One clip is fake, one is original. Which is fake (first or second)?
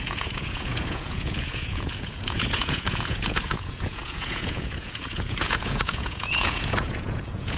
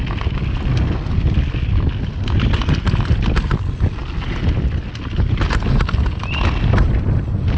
first